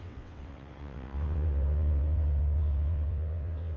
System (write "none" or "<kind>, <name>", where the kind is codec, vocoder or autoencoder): vocoder, WaveNeXt